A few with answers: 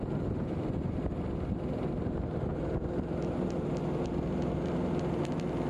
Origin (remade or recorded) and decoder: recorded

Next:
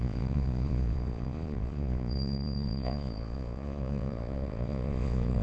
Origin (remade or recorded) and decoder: remade, vocoder, Vocos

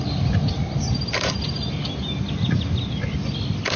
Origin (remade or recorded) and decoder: recorded